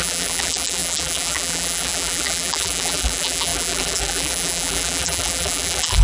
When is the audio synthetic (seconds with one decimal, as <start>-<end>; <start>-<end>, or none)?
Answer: 0.0-6.0